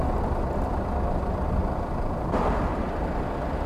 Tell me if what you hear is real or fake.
real